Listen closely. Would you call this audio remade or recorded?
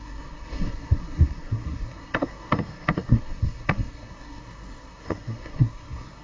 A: remade